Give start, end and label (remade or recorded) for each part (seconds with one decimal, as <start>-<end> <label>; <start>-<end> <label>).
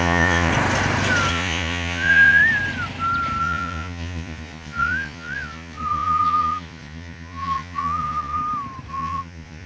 0.0-0.5 remade; 0.5-1.3 recorded; 1.3-2.4 remade; 2.4-3.4 recorded; 3.4-8.4 remade; 8.4-8.9 recorded; 8.9-9.7 remade